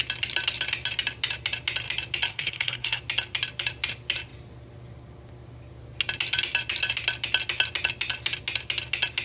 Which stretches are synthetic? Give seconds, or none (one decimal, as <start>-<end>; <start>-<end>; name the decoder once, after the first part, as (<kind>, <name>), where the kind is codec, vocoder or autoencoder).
2.3-3.0 (codec, SNAC)